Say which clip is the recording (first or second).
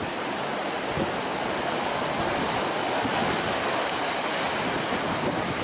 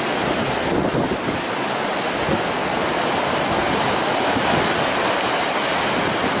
second